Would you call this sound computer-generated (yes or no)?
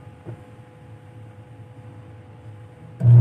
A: no